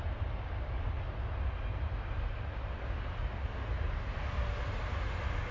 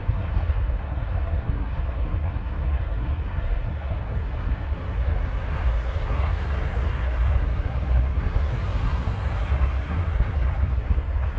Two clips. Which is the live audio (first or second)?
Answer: first